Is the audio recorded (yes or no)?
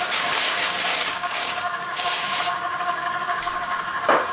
no